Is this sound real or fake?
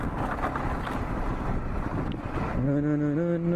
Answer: real